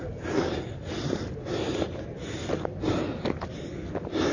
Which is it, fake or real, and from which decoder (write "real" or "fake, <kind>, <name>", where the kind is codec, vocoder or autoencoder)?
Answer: real